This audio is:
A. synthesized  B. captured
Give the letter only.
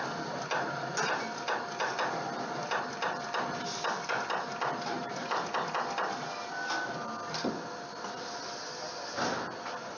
B